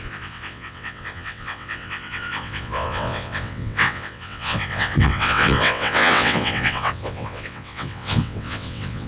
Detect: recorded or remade remade